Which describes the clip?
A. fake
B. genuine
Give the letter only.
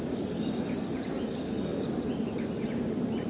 B